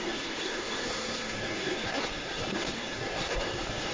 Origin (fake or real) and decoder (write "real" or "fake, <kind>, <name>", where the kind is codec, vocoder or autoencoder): fake, codec, SNAC